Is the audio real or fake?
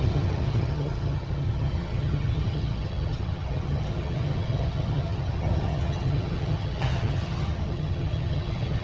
fake